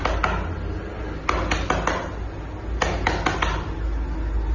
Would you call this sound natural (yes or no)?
yes